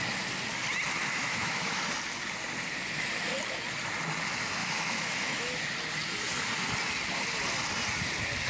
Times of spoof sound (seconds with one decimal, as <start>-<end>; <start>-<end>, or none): 1.0-1.8; 4.6-5.6